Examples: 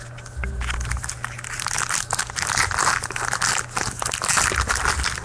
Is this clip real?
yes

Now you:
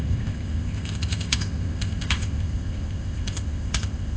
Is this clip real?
no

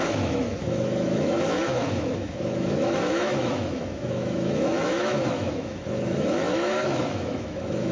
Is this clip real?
no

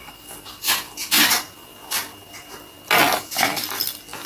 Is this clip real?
yes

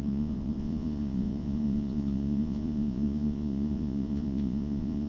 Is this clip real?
no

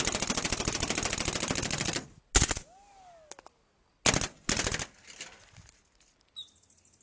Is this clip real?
yes